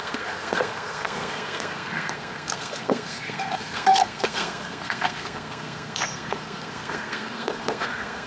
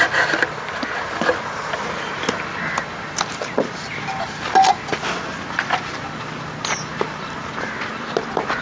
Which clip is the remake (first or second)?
first